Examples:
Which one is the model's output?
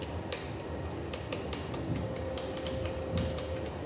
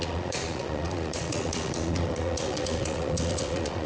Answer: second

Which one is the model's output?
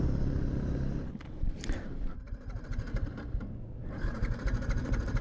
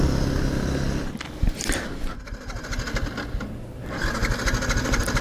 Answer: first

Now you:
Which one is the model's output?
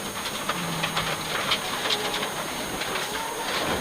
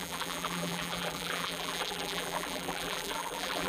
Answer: second